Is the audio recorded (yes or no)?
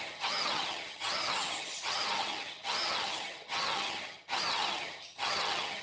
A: no